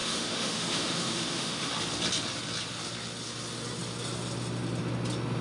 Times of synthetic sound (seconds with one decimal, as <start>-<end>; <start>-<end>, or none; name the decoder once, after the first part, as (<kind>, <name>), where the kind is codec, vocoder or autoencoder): 0.0-1.7 (autoencoder, DAC-VAE)